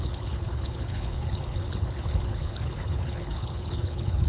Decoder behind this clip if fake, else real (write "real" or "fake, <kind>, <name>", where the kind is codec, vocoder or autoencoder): fake, codec, HILCodec